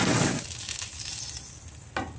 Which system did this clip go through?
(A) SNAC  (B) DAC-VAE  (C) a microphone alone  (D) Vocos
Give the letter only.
C